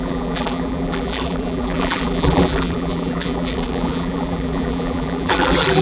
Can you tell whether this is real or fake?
fake